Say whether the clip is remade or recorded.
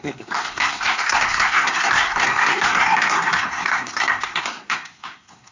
remade